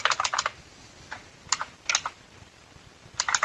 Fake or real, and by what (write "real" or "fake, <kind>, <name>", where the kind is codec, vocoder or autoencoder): fake, vocoder, BigVGAN v2